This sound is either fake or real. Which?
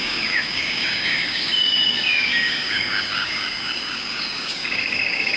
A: fake